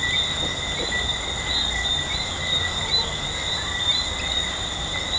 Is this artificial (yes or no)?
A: no